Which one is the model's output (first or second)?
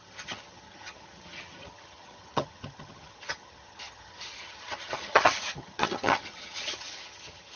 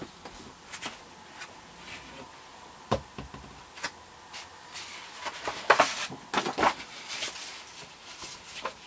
first